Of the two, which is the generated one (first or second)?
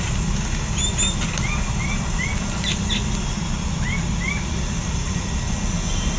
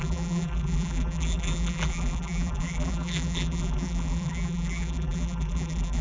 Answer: second